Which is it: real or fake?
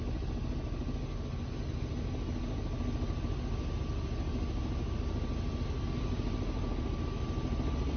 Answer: real